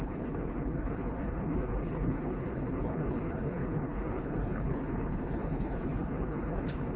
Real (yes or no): no